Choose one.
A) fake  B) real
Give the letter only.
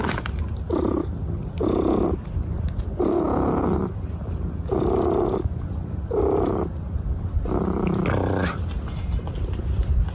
B